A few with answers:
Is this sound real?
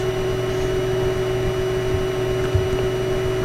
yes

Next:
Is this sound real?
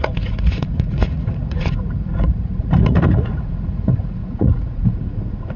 no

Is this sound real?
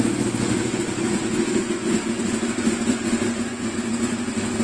no